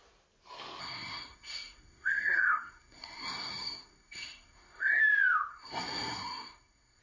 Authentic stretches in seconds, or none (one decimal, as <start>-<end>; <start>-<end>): 0.0-0.8; 5.0-5.5